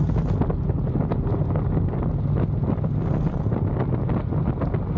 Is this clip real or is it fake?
real